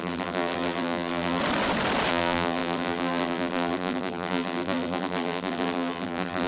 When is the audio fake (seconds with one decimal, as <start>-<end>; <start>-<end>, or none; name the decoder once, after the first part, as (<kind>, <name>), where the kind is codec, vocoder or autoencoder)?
0.0-1.4 (vocoder, BigVGAN v2); 2.1-6.5